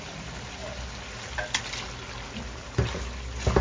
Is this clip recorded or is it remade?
recorded